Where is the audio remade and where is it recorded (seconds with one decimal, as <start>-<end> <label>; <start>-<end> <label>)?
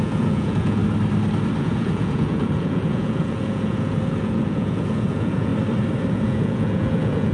0.0-0.8 remade; 0.8-1.6 recorded; 1.6-5.5 remade; 5.5-6.1 recorded; 6.1-7.3 remade